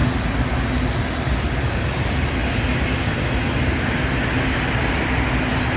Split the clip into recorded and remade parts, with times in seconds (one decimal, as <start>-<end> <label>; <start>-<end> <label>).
0.0-5.8 recorded